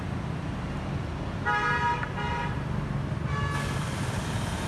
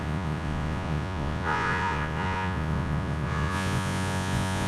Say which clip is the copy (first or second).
second